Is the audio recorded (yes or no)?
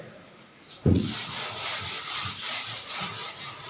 no